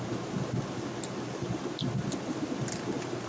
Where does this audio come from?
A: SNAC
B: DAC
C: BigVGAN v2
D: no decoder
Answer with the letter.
D